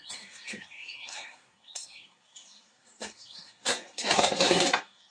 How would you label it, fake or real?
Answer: fake